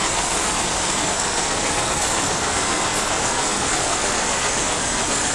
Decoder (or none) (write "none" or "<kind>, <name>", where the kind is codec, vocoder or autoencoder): codec, SNAC